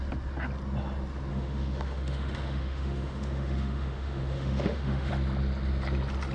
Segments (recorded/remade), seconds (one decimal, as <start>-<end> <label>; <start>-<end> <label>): 0.0-1.3 recorded; 1.3-5.1 remade; 5.1-6.3 recorded